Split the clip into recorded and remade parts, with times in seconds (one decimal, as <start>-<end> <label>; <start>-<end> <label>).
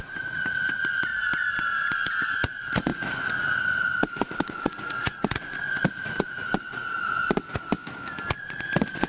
0.0-1.1 remade; 1.1-1.9 recorded; 1.9-7.2 remade; 7.2-8.4 recorded; 8.4-9.1 remade